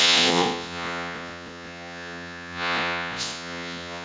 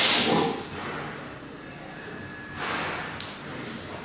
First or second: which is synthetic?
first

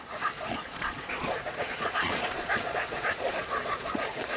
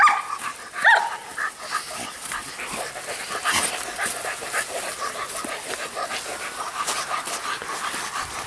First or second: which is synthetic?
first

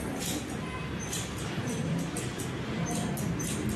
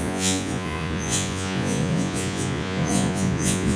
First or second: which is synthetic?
second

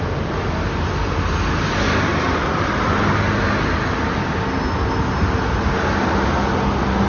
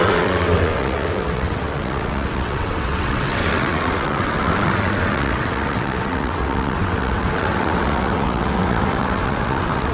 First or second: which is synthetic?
second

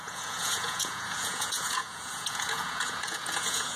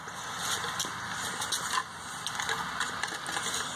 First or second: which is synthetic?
first